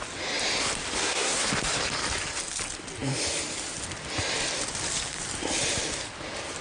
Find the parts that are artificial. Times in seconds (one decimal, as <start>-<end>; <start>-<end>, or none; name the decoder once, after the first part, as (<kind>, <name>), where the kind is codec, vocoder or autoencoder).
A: 1.0-1.5 (codec, SNAC)